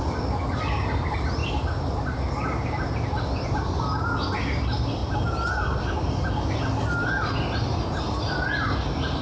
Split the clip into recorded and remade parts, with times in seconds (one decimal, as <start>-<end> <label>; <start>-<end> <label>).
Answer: 0.0-9.2 recorded